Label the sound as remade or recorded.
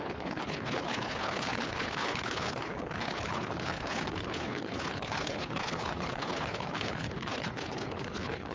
remade